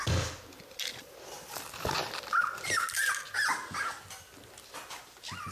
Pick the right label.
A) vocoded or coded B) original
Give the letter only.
B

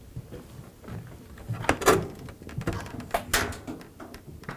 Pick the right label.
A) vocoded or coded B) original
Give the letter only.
B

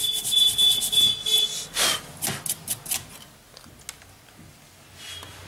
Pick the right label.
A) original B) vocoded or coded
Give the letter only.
A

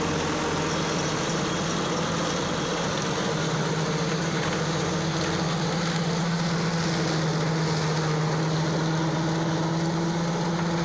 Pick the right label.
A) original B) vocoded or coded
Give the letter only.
A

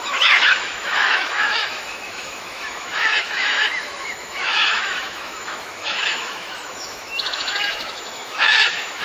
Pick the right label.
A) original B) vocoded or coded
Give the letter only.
B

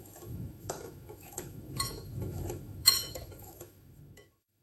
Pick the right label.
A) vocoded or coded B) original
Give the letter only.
A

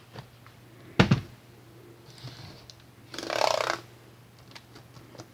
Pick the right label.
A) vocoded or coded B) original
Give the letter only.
B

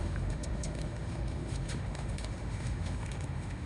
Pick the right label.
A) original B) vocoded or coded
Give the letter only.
B